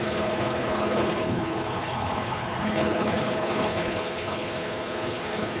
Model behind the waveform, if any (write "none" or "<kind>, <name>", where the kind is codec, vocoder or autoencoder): codec, HILCodec